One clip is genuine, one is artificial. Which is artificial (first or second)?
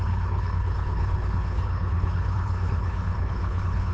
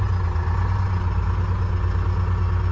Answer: first